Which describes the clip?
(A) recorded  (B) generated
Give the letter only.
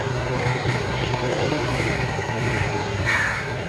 B